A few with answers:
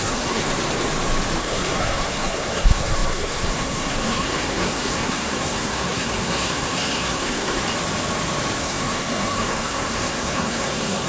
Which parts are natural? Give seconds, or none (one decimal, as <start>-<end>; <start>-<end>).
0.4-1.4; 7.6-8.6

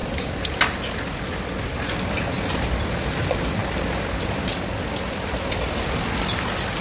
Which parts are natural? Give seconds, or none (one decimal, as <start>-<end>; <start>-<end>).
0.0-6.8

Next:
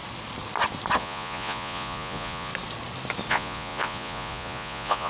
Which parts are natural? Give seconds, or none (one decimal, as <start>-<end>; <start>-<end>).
0.0-1.0; 2.5-3.3